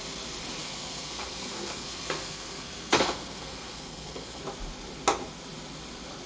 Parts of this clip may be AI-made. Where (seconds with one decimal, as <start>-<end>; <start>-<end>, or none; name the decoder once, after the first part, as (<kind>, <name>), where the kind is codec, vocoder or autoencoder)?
0.6-4.4 (codec, SNAC)